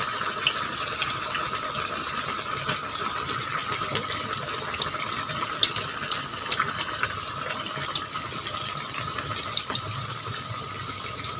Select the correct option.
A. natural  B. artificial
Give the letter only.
A